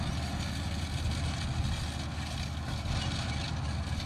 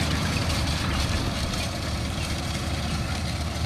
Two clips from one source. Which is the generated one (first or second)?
second